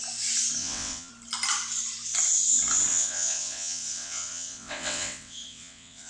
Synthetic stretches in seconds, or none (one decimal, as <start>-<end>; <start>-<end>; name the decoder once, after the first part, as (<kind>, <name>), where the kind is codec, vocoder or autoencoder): 0.6-1.1 (vocoder, WaveNeXt); 2.9-6.1